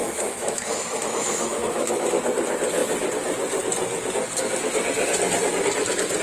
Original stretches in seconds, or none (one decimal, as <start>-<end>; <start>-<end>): 2.2-6.2